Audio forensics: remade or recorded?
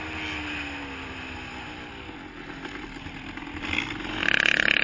recorded